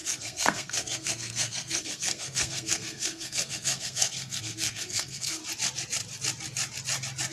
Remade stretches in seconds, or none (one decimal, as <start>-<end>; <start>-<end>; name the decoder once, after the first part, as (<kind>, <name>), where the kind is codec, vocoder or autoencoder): 0.0-5.4 (codec, SNAC)